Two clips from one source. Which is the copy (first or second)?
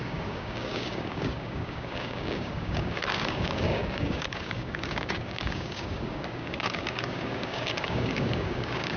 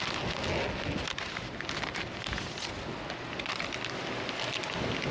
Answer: first